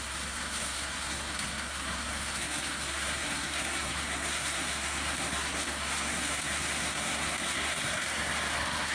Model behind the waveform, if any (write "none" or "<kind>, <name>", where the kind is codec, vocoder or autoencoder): codec, SNAC